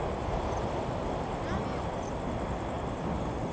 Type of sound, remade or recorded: recorded